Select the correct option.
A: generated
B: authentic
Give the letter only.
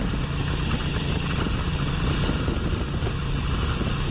B